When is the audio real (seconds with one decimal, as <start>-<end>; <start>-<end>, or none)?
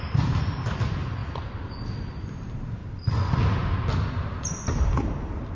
1.2-2.2; 2.8-4.0